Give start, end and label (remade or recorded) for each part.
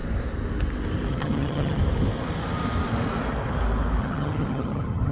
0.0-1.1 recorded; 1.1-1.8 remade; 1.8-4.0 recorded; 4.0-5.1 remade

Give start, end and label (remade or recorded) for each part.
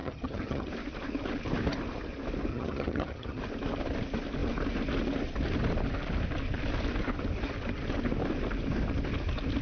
0.0-0.7 remade; 0.7-2.5 recorded; 2.5-3.4 remade; 3.4-9.6 recorded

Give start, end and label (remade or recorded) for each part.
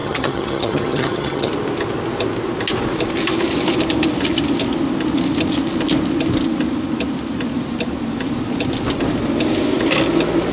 0.0-1.5 remade; 1.5-10.5 recorded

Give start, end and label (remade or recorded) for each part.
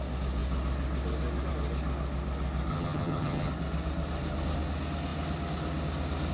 0.0-2.7 recorded; 2.7-3.5 remade; 3.5-6.3 recorded